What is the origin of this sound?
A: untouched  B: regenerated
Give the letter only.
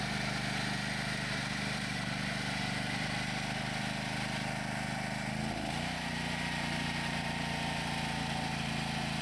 A